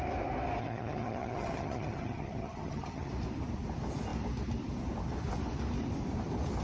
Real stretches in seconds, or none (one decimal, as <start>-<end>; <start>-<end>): 0.0-0.6; 3.1-6.6